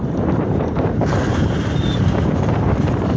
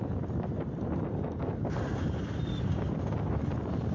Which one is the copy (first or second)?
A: first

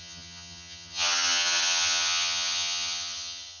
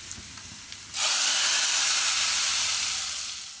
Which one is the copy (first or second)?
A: first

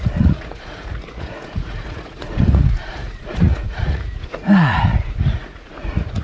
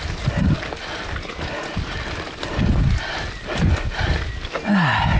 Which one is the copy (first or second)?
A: first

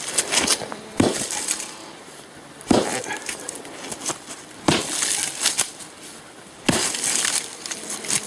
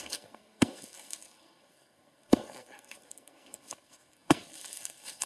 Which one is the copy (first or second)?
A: second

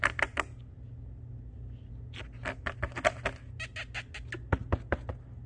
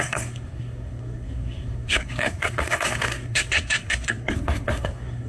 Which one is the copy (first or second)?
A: second